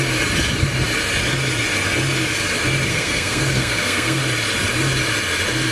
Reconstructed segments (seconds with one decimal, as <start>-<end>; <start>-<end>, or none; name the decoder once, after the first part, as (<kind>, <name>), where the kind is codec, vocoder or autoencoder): 2.9-4.2 (codec, SNAC)